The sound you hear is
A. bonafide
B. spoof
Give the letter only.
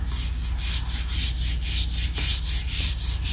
A